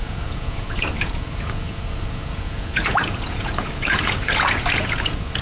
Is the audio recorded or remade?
remade